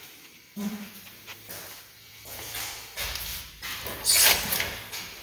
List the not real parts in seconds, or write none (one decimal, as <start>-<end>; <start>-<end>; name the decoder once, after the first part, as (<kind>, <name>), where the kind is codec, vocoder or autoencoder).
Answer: 0.0-5.2 (vocoder, BigVGAN v2)